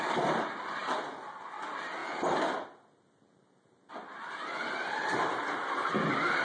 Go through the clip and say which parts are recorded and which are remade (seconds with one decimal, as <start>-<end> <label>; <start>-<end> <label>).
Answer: 0.0-6.4 recorded